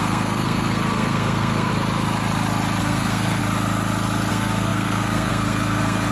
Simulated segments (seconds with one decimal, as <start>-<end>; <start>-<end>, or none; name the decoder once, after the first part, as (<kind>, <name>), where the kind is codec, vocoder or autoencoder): 0.0-1.7 (codec, SNAC); 2.8-3.4; 4.3-6.1